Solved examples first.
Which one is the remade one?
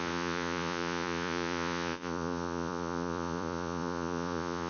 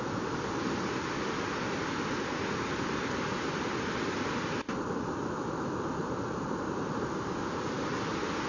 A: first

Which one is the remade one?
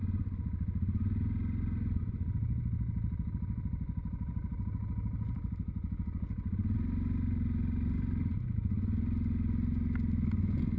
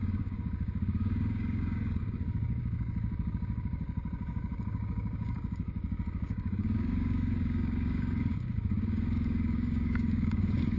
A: second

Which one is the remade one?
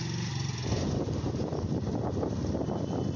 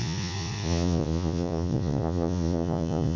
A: second